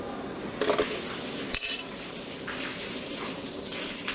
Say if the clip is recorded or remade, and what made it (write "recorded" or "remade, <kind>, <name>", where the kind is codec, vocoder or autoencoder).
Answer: recorded